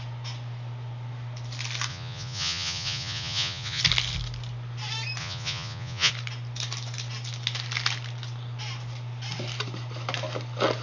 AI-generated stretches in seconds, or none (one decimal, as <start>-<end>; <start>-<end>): 1.9-3.8; 5.2-6.1